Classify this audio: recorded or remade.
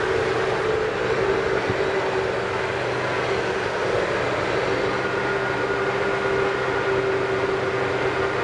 recorded